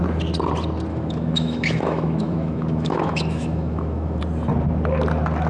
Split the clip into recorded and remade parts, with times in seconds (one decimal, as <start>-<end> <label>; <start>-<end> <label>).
0.0-0.9 recorded; 0.9-4.2 remade; 4.2-5.5 recorded